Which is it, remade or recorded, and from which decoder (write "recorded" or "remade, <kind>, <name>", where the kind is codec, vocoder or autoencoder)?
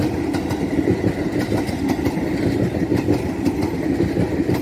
recorded